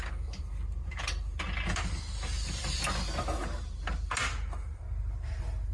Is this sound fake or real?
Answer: real